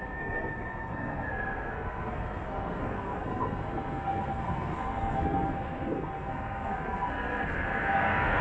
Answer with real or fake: fake